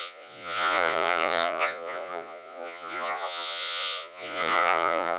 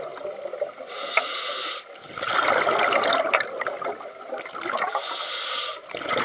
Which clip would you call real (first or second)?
second